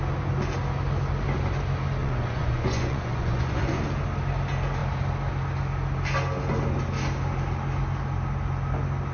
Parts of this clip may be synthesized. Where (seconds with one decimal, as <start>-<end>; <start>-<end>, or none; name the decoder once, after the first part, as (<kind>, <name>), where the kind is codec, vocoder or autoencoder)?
2.0-3.8 (vocoder, Vocos)